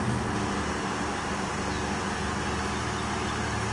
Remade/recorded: recorded